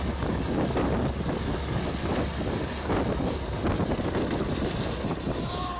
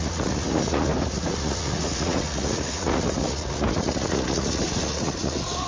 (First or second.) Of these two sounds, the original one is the first